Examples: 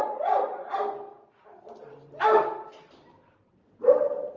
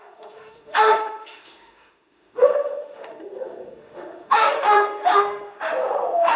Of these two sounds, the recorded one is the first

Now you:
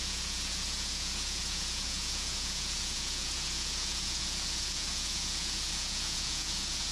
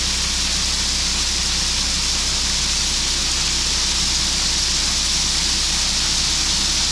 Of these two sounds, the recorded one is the second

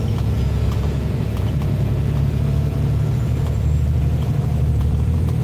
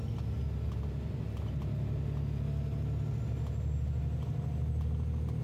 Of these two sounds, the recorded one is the second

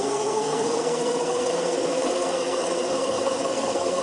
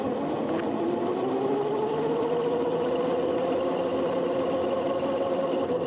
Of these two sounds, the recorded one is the second